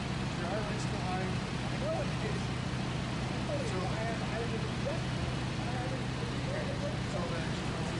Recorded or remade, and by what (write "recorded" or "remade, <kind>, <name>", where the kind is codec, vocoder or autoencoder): recorded